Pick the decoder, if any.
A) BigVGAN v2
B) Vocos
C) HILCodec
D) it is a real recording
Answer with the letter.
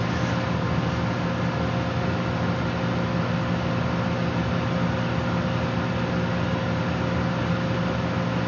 D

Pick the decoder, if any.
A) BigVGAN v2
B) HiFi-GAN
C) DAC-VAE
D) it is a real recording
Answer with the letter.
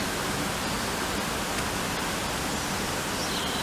D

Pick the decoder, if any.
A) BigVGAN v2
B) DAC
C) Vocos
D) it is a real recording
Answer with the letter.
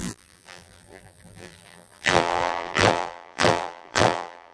A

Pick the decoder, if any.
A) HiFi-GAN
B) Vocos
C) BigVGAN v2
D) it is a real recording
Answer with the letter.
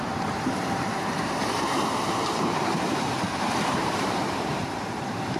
C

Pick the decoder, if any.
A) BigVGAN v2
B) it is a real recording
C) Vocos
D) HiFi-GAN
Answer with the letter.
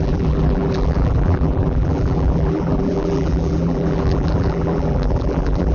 A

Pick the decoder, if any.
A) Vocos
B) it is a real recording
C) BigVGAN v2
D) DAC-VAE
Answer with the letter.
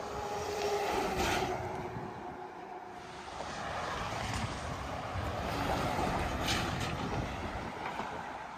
B